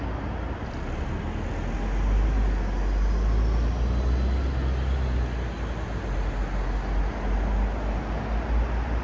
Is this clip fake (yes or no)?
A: no